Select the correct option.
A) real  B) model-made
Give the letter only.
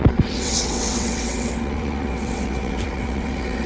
B